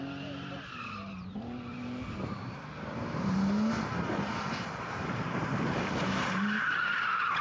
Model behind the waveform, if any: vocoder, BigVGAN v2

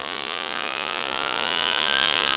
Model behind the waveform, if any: vocoder, Vocos